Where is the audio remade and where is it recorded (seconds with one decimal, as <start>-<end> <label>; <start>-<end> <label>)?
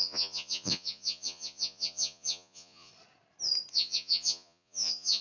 0.0-2.9 remade; 2.9-3.7 recorded; 3.7-5.2 remade